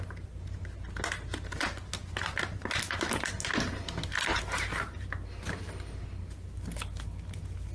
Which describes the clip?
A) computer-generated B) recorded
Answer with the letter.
B